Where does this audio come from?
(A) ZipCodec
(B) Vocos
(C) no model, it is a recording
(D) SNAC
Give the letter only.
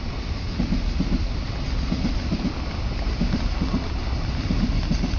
C